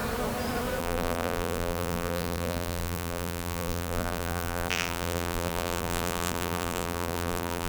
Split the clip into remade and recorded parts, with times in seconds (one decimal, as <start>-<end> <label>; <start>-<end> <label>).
0.0-0.8 recorded; 0.8-7.7 remade